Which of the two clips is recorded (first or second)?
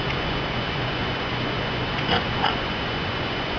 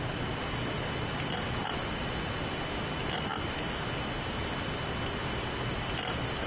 second